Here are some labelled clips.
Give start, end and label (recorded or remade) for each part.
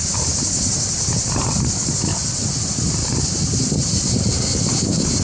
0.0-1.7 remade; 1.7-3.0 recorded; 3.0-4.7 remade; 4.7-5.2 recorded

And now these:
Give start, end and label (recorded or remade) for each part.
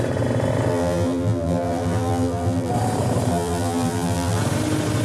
0.0-0.7 recorded; 0.7-2.7 remade; 2.7-3.3 recorded; 3.3-4.4 remade; 4.4-5.0 recorded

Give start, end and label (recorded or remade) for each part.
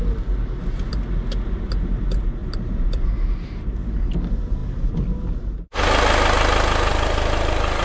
0.0-2.4 recorded; 2.4-3.7 remade; 3.7-6.9 recorded; 6.9-7.8 remade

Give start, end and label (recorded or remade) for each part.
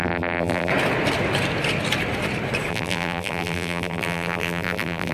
0.0-0.7 remade; 0.7-2.7 recorded; 2.7-5.1 remade